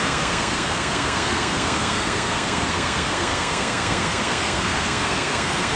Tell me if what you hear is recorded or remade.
remade